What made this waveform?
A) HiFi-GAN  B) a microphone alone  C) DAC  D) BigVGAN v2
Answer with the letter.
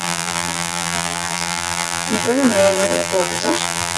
D